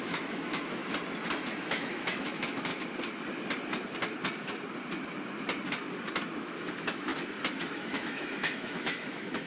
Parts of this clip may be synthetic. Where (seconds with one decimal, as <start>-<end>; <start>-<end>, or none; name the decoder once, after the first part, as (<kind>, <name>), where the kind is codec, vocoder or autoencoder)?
0.0-0.8 (autoencoder, DAC-VAE); 1.5-2.7; 6.3-7.1; 7.7-9.5